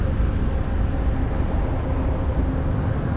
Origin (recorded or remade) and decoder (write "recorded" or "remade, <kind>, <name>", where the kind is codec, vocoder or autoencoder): recorded